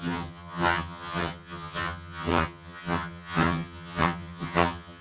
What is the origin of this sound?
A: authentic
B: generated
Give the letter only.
B